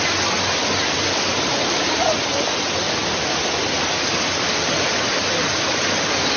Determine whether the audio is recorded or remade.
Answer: recorded